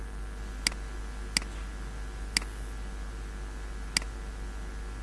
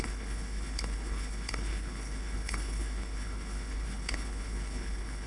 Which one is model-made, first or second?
second